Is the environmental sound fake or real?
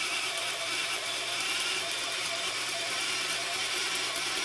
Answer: fake